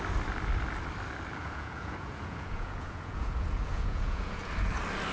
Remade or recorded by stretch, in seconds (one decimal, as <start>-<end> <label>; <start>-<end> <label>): 0.0-1.4 recorded; 1.4-4.5 remade; 4.5-5.1 recorded